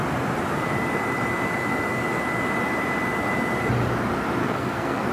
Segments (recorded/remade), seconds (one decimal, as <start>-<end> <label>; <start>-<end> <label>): 0.0-4.4 recorded; 4.4-5.1 remade